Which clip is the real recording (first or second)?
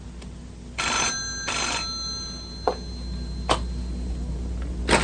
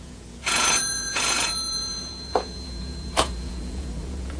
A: first